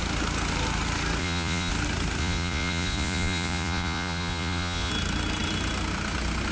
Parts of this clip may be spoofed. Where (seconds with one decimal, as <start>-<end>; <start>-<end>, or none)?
1.2-1.7; 2.2-4.9